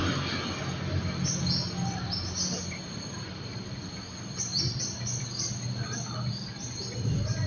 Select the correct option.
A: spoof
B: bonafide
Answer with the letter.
B